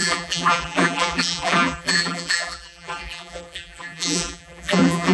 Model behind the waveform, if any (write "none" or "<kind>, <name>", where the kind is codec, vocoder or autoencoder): vocoder, BigVGAN v2